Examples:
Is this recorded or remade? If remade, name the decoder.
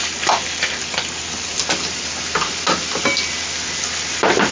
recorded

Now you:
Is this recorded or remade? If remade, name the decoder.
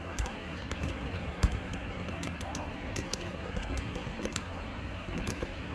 remade, codec, SNAC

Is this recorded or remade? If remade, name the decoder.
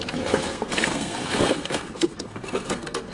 remade, codec, SNAC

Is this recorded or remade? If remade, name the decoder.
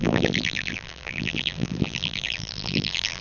remade, vocoder, BigVGAN v2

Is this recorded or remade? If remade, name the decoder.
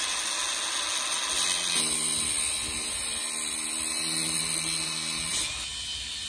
recorded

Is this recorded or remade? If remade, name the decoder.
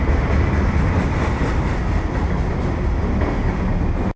recorded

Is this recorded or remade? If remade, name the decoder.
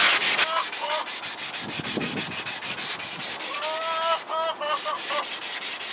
recorded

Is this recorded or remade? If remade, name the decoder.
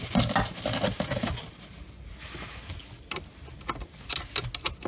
recorded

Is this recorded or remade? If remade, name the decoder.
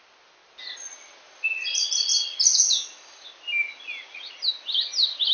recorded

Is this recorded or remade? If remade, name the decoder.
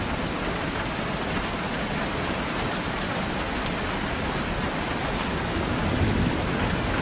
recorded